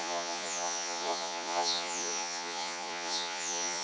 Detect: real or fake fake